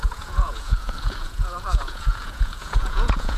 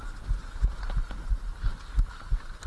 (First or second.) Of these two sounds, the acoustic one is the second